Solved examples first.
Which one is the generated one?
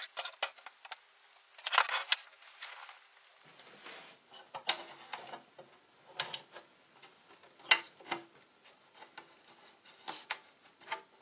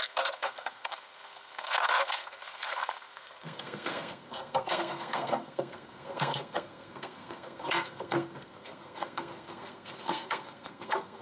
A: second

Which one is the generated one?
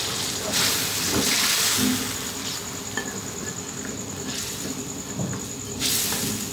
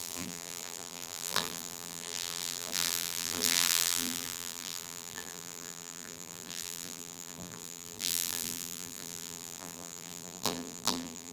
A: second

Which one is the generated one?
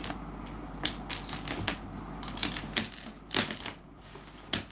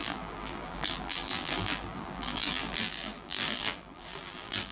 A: second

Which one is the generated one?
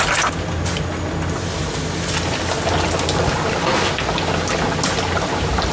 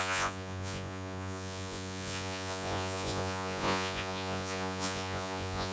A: second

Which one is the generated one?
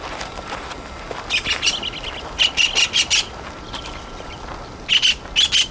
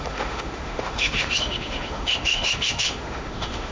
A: second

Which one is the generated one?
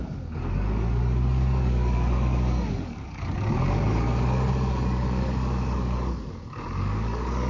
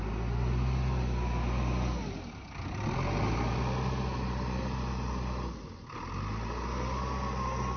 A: first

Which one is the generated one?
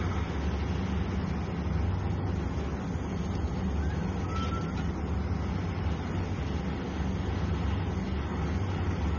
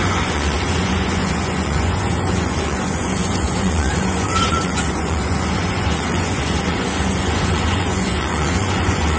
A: second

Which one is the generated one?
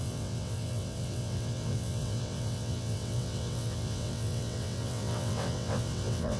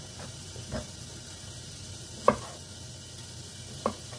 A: first